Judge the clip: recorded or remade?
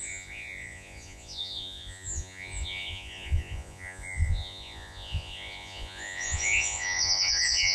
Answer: remade